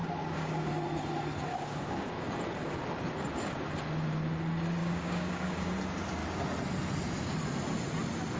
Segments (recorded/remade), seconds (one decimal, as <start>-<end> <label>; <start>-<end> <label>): 0.0-0.7 remade; 0.7-1.5 recorded; 1.5-2.1 remade; 2.1-4.8 recorded; 4.8-5.7 remade; 5.7-8.4 recorded